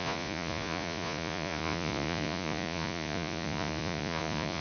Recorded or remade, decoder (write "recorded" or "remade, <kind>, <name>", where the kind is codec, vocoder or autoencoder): remade, vocoder, Vocos